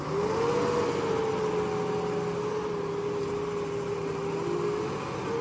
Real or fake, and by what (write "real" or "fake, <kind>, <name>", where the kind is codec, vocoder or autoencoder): real